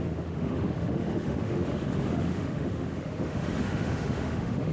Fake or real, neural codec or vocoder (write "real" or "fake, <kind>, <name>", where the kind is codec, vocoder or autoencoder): fake, autoencoder, DAC-VAE